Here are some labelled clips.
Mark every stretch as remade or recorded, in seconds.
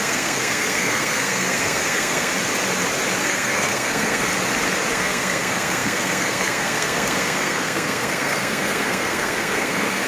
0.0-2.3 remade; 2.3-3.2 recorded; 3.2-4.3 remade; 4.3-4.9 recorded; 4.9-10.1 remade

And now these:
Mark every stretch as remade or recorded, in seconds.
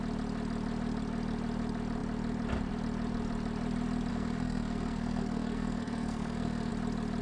0.0-4.1 recorded; 4.1-6.7 remade; 6.7-7.2 recorded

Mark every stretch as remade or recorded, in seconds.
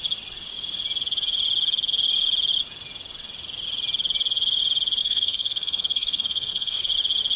0.0-5.0 recorded; 5.0-6.8 remade; 6.8-7.4 recorded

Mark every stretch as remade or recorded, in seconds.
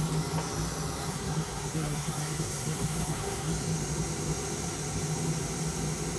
0.0-1.1 recorded; 1.1-3.5 remade; 3.5-6.2 recorded